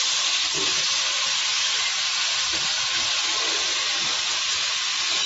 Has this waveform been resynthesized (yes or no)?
no